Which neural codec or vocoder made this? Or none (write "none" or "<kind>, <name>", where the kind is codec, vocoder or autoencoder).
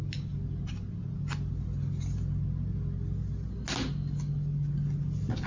none